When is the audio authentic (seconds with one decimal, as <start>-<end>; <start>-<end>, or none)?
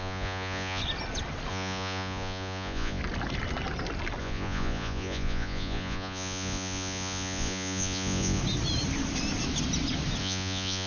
0.8-1.5; 3.0-4.2; 8.4-10.2